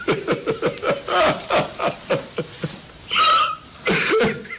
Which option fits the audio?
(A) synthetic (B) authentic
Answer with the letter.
B